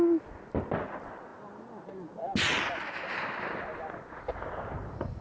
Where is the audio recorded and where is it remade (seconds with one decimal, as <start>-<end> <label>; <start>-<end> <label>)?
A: 0.0-5.2 recorded